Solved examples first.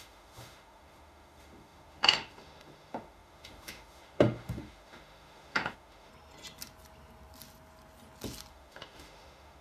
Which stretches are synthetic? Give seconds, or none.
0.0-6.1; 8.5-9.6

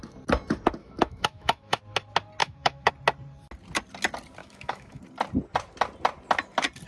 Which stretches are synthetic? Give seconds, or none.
0.8-1.8; 2.4-2.9; 4.4-5.0

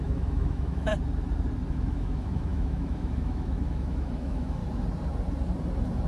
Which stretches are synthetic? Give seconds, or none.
0.0-0.9; 1.7-4.6